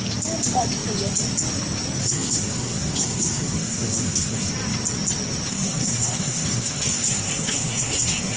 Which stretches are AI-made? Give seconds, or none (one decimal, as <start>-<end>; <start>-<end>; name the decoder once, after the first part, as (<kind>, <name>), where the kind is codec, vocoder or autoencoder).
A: 2.0-4.5 (codec, SNAC); 5.5-8.4